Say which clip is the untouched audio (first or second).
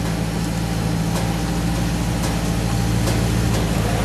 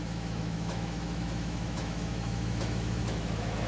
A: first